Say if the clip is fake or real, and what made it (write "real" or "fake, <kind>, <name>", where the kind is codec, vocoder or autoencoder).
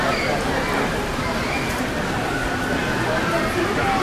real